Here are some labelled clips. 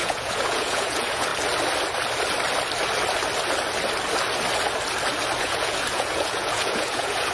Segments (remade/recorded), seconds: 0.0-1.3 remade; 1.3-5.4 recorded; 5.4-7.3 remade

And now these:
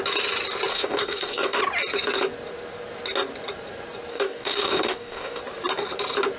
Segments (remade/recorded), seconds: 0.0-0.7 recorded; 0.7-1.6 remade; 1.6-4.1 recorded; 4.1-5.4 remade; 5.4-6.4 recorded

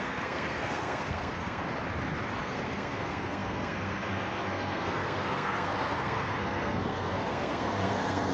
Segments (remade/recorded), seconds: 0.0-1.6 remade; 1.6-2.4 recorded; 2.4-8.3 remade

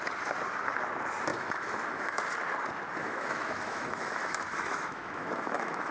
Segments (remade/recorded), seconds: 0.0-1.3 recorded; 1.3-2.2 remade; 2.2-3.0 recorded; 3.0-5.9 remade

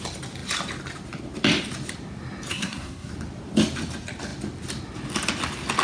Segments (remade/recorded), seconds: 0.0-2.5 recorded; 2.5-3.1 remade; 3.1-5.8 recorded

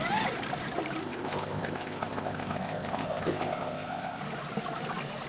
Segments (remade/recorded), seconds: 0.0-1.0 recorded; 1.0-4.2 remade; 4.2-5.3 recorded

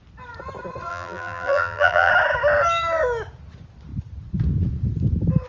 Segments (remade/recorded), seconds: 0.0-0.9 recorded; 0.9-2.1 remade; 2.1-5.5 recorded